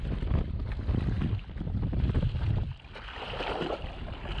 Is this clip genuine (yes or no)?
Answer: yes